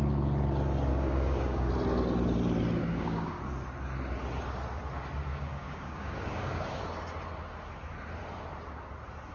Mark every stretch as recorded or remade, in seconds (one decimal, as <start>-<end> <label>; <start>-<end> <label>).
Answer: 0.0-0.9 recorded; 0.9-1.7 remade; 1.7-2.8 recorded; 2.8-3.4 remade; 3.4-5.3 recorded; 5.3-6.8 remade; 6.8-9.3 recorded

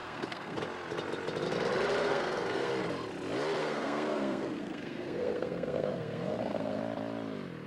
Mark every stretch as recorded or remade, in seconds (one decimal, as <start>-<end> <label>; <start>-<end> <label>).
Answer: 0.0-0.6 remade; 0.6-2.0 recorded; 2.0-2.7 remade; 2.7-3.6 recorded; 3.6-6.8 remade; 6.8-7.7 recorded

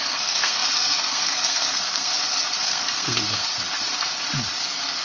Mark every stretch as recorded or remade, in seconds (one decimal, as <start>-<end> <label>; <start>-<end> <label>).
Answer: 0.0-2.1 remade; 2.1-2.6 recorded; 2.6-3.5 remade; 3.5-4.6 recorded; 4.6-5.0 remade

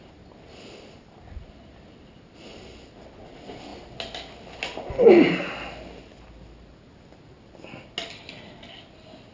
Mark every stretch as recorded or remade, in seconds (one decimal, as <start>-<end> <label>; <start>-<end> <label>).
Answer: 0.0-9.3 recorded

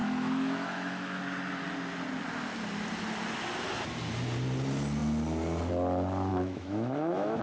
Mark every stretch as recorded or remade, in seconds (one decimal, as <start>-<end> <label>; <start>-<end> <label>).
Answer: 0.0-1.2 remade; 1.2-6.3 recorded; 6.3-7.4 remade